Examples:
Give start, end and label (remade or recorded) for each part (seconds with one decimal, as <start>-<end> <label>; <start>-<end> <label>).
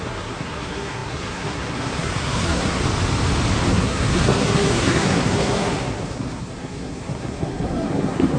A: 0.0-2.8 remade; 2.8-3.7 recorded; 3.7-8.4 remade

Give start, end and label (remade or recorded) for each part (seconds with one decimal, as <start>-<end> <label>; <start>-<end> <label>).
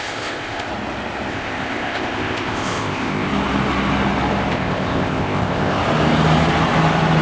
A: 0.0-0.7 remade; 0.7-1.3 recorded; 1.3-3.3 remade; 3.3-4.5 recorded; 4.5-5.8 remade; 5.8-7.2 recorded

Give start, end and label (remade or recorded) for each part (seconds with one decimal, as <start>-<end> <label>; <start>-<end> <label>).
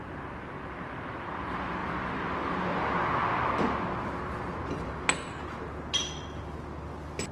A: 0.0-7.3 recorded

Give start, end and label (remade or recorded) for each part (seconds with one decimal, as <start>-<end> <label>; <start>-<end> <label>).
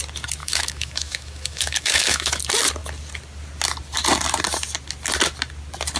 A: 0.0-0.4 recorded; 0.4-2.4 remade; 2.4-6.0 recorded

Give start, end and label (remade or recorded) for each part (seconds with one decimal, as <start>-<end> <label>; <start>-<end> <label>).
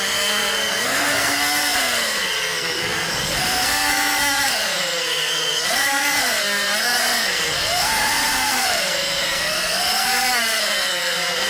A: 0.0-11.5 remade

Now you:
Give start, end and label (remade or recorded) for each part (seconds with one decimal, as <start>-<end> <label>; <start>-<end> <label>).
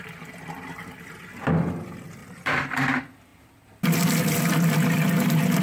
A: 0.0-2.2 recorded; 2.2-2.7 remade; 2.7-5.6 recorded